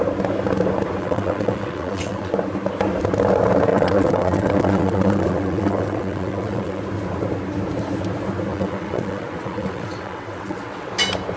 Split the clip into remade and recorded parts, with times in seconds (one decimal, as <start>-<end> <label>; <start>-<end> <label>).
0.0-1.0 recorded; 1.0-2.3 remade; 2.3-3.7 recorded; 3.7-6.8 remade; 6.8-8.5 recorded; 8.5-10.9 remade; 10.9-11.4 recorded